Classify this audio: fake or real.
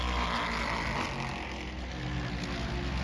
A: real